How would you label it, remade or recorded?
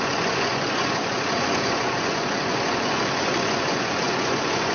remade